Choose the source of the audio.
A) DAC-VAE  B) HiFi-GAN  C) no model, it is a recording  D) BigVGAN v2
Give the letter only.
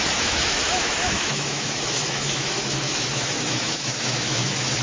A